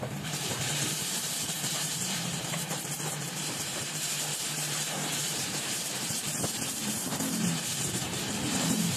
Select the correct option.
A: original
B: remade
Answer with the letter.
B